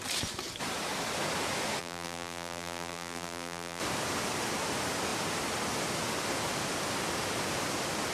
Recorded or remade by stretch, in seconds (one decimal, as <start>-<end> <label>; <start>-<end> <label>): 0.0-1.8 recorded; 1.8-3.8 remade; 3.8-8.1 recorded